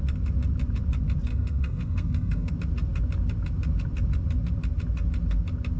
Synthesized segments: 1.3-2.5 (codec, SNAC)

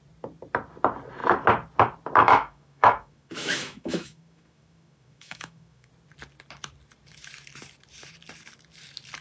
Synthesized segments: 2.2-5.9 (autoencoder, DAC-VAE)

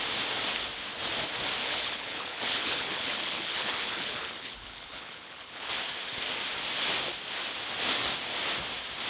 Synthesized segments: 1.6-5.7 (codec, HILCodec)

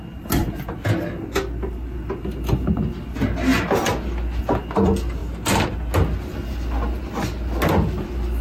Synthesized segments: none

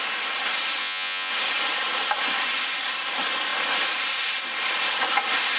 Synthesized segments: 0.8-1.3 (vocoder, Vocos)

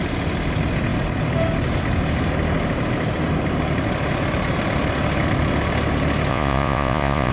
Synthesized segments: 6.3-7.3 (vocoder, Vocos)

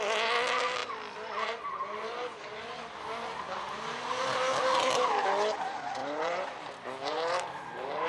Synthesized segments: 6.0-8.1 (vocoder, BigVGAN v2)

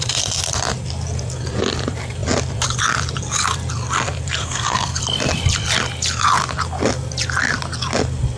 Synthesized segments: 4.4-5.0 (codec, SNAC)